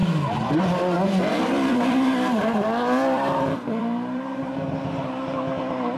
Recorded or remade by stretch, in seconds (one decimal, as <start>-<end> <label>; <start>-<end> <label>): 0.0-1.3 recorded; 1.3-4.9 remade; 4.9-6.0 recorded